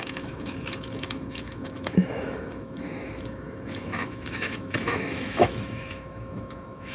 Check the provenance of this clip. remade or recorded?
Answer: remade